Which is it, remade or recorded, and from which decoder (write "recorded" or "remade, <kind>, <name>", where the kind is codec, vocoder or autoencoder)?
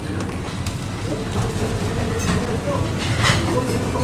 recorded